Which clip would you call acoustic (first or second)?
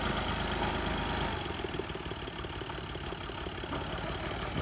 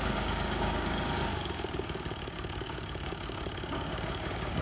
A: first